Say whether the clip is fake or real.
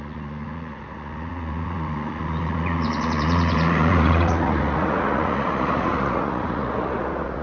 fake